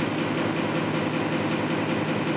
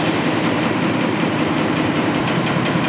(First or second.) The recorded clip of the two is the first